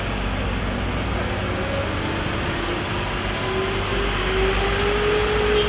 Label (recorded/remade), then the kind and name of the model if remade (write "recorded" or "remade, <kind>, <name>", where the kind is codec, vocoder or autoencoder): recorded